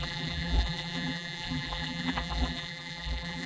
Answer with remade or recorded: remade